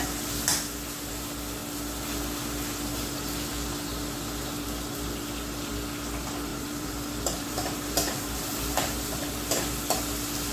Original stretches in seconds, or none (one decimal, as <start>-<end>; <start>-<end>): 0.0-6.5; 9.3-10.5